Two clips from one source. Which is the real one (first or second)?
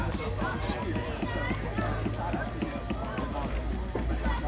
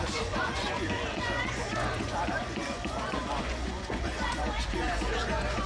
first